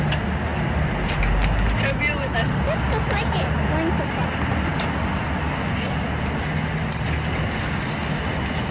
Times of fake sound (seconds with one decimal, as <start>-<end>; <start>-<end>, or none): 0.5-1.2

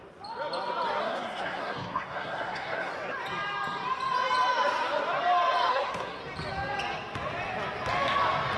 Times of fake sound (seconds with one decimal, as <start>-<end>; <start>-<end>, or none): 1.0-2.9; 5.7-6.2

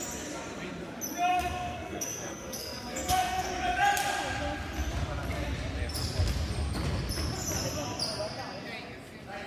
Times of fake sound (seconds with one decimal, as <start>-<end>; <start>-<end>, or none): 1.3-3.5